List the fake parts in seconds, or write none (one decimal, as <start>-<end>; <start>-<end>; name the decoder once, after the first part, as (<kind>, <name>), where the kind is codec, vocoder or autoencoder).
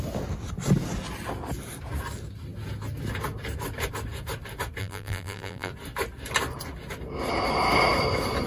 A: 4.8-5.7 (vocoder, BigVGAN v2)